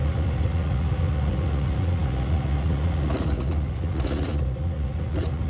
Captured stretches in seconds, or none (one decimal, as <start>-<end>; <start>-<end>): none